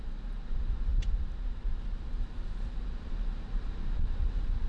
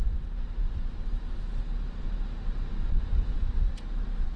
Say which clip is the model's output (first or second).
first